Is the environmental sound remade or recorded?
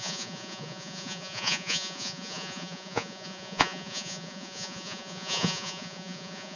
remade